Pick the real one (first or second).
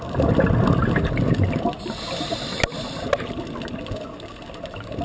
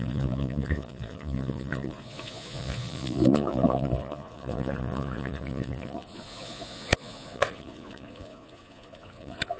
first